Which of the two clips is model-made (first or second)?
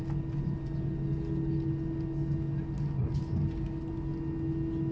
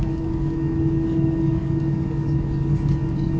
second